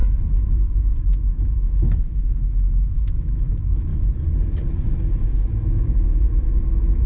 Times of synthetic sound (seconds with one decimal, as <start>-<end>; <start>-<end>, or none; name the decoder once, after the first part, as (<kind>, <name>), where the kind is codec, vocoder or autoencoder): 0.0-3.9 (autoencoder, DAC-VAE); 5.5-7.1